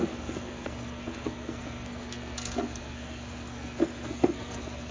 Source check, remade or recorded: remade